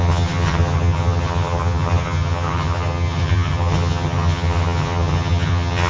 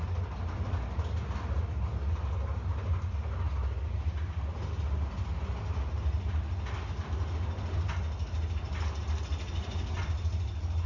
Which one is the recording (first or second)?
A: second